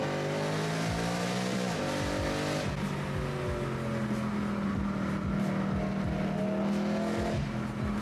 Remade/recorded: recorded